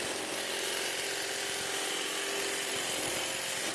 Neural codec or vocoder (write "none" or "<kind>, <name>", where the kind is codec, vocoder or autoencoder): none